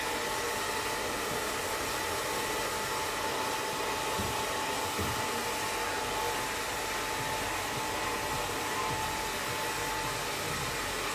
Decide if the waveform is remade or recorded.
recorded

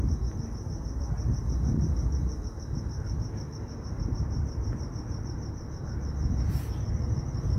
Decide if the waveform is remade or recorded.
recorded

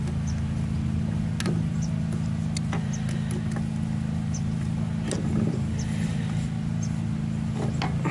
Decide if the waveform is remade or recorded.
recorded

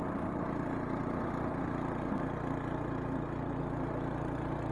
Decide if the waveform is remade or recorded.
recorded